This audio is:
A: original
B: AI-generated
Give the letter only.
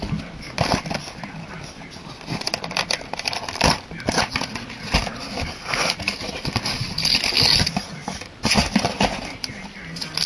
A